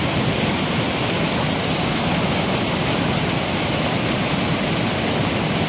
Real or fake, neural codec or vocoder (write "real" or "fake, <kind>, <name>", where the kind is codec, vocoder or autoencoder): real